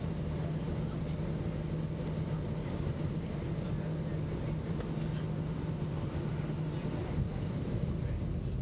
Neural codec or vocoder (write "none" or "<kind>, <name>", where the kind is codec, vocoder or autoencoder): none